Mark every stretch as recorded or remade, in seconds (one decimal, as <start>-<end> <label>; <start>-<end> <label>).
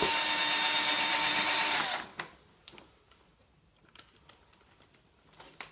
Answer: 0.0-5.7 recorded